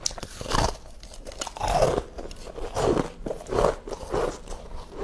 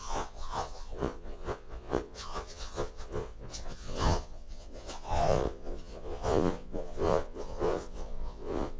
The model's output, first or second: second